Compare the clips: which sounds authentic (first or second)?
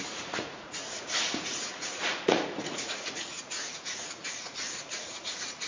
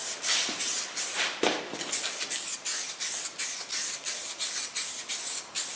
second